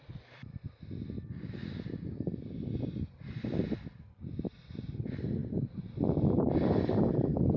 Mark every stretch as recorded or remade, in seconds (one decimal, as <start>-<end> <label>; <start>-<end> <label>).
0.0-7.6 recorded